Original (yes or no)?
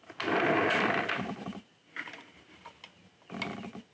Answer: yes